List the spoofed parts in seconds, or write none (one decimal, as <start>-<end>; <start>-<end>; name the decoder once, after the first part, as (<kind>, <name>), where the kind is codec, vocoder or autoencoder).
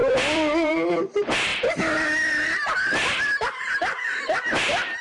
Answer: 0.0-5.0 (vocoder, BigVGAN v2)